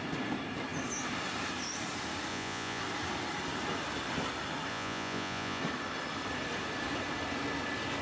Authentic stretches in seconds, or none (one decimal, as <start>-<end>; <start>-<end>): 0.0-2.3; 2.8-4.7; 5.6-8.0